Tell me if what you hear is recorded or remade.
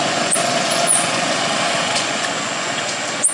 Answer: remade